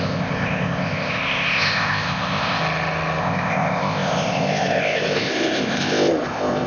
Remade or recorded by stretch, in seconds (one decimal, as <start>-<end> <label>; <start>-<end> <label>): 0.0-2.6 remade; 2.6-3.2 recorded; 3.2-6.7 remade